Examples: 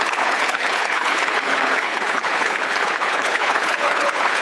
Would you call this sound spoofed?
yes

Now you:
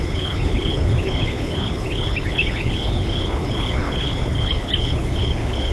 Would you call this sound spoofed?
yes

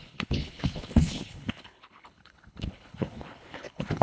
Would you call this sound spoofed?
yes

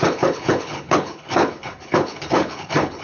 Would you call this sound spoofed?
yes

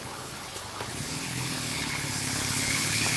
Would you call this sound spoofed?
yes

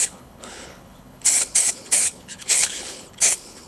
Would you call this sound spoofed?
yes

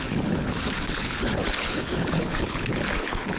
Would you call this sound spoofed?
yes